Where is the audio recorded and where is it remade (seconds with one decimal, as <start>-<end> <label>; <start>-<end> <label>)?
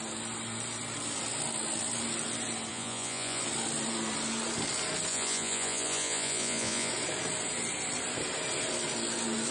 0.0-2.7 recorded; 2.7-3.4 remade; 3.4-5.1 recorded; 5.1-6.9 remade; 6.9-9.5 recorded